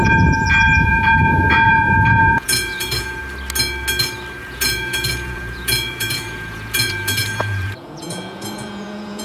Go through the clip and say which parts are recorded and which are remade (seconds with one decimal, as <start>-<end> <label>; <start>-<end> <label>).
0.0-3.2 remade; 3.2-4.4 recorded; 4.4-9.2 remade